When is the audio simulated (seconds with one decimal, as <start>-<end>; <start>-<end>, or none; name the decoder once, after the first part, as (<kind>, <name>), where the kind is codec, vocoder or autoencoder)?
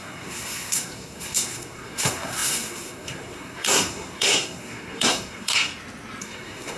0.0-5.7 (codec, SNAC); 6.2-6.8